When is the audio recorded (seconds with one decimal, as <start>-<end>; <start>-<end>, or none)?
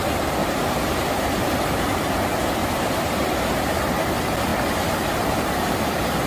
0.0-0.4; 1.6-2.6; 3.9-6.3